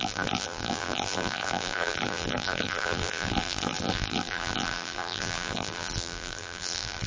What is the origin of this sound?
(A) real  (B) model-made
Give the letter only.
B